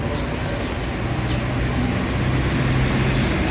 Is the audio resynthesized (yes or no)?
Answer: no